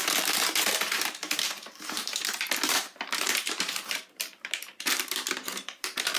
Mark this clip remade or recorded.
remade